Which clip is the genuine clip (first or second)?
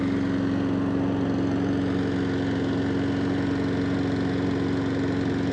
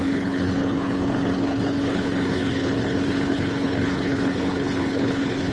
first